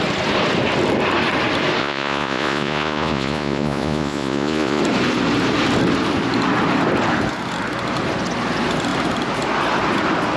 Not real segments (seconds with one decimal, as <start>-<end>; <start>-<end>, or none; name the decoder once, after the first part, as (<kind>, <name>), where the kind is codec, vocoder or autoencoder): 1.8-4.8 (vocoder, Vocos)